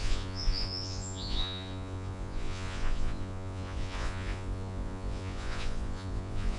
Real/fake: fake